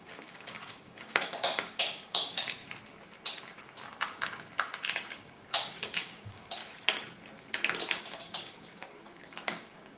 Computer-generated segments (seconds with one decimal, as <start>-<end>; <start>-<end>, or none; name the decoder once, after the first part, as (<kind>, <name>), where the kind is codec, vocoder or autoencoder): 0.0-2.6 (codec, DAC); 5.1-6.6; 8.0-10.0